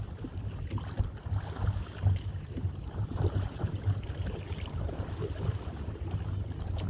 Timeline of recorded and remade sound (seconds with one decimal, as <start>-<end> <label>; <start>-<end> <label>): 0.0-2.3 recorded; 2.3-3.8 remade; 3.8-6.9 recorded